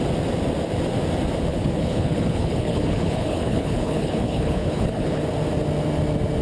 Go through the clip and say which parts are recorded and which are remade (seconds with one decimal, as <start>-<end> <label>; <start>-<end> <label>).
0.0-1.5 recorded; 1.5-5.2 remade; 5.2-6.4 recorded